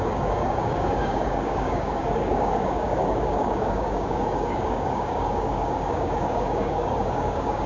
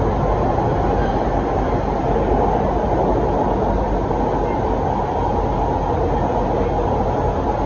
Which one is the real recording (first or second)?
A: second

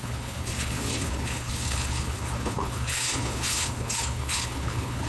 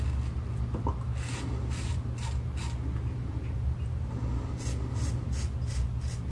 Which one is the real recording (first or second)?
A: second